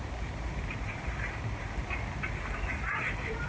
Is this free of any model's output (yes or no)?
no